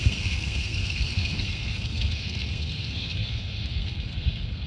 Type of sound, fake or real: fake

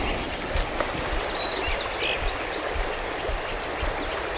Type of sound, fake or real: real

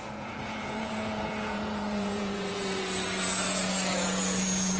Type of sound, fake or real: fake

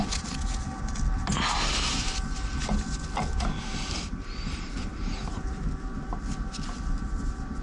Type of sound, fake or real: real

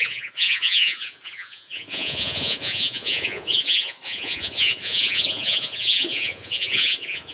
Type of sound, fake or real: fake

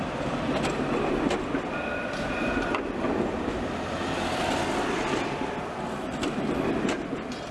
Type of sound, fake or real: real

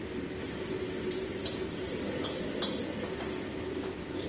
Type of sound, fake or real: real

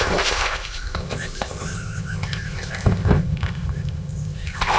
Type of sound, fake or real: fake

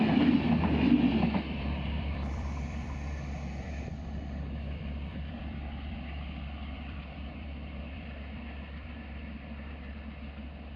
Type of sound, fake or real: fake